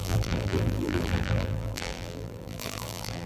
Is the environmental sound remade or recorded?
remade